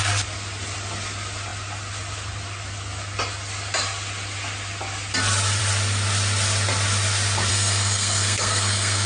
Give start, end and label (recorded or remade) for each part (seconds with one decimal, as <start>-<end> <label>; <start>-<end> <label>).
0.0-7.5 recorded; 7.5-9.1 remade